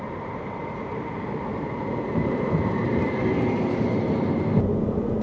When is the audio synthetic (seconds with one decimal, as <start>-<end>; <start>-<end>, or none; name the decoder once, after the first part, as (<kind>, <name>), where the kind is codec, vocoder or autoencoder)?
0.0-3.2 (vocoder, BigVGAN v2); 4.8-5.2

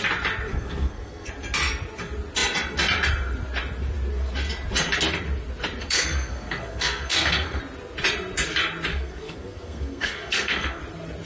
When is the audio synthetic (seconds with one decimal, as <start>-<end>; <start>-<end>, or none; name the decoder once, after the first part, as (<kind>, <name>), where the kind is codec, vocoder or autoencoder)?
0.5-1.3 (codec, SNAC); 5.8-7.6; 8.9-10.8

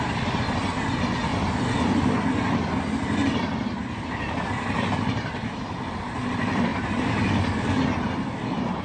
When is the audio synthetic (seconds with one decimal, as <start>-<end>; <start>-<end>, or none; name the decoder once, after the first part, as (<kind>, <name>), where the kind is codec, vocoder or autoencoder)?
0.0-1.3 (vocoder, BigVGAN v2); 2.1-8.8